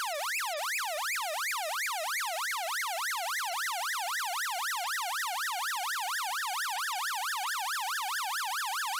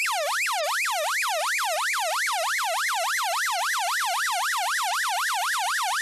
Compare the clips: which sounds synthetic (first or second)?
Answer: second